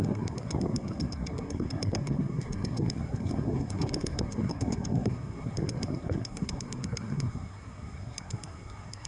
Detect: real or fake fake